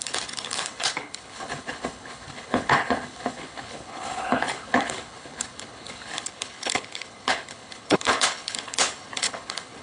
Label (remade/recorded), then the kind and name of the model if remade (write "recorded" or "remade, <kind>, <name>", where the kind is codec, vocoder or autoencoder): remade, codec, HILCodec